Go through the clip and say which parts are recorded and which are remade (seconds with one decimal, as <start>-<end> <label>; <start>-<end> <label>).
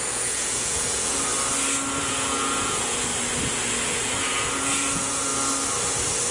0.0-1.3 remade; 1.3-2.0 recorded; 2.0-3.1 remade; 3.1-3.7 recorded; 3.7-5.3 remade; 5.3-6.3 recorded